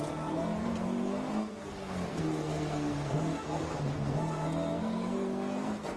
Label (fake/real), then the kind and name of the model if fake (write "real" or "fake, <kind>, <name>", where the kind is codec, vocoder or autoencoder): fake, codec, SNAC